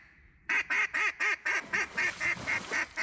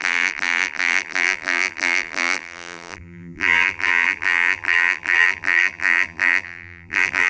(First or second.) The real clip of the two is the first